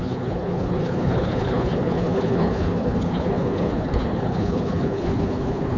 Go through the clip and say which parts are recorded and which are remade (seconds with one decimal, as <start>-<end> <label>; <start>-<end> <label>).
0.0-5.8 remade